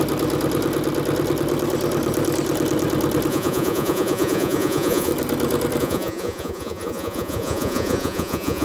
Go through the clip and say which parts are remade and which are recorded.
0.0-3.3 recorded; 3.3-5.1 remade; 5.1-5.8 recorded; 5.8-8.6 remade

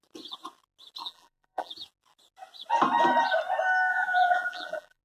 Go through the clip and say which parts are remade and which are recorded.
0.0-1.0 recorded; 1.0-1.7 remade; 1.7-3.9 recorded; 3.9-5.0 remade